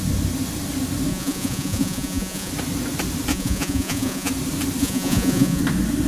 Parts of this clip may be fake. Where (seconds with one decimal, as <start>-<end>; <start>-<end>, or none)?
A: 1.1-2.5; 3.3-4.3; 4.8-5.6